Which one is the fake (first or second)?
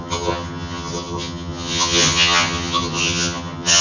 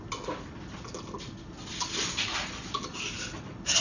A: first